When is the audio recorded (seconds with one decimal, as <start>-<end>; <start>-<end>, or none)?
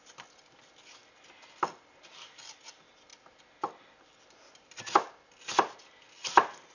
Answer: 0.0-3.1; 4.5-6.7